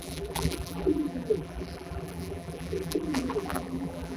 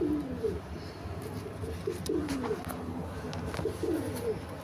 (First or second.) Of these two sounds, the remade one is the first